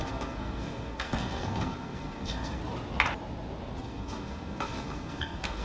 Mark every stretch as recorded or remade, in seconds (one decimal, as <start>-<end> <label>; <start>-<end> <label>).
0.0-2.6 remade; 2.6-3.8 recorded; 3.8-5.6 remade